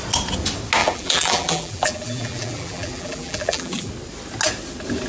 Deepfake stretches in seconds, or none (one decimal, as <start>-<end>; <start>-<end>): 0.8-3.9